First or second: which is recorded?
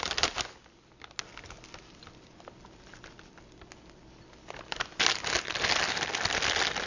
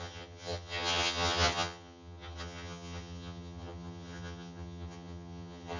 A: first